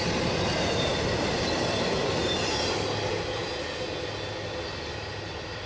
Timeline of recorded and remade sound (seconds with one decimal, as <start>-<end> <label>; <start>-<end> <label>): 0.0-5.7 recorded